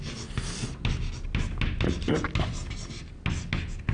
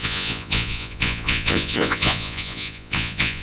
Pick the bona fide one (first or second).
first